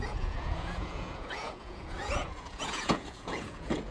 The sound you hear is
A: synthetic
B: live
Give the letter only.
A